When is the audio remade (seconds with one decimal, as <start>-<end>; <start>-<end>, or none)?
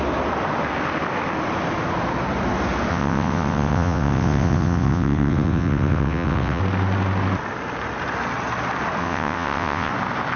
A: 2.9-6.6; 9.0-9.9